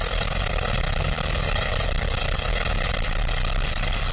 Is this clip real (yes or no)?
yes